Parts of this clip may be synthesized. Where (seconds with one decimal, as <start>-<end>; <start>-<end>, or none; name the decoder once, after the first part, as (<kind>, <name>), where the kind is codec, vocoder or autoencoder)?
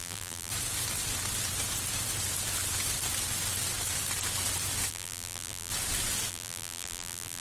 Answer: 0.0-0.5 (vocoder, BigVGAN v2); 4.9-5.7; 6.3-7.4